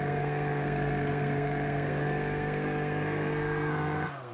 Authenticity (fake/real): fake